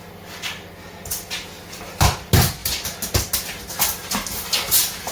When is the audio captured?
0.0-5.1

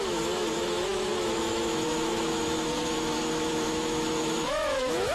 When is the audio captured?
none

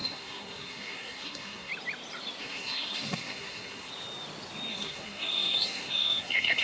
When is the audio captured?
1.7-2.4; 3.9-4.7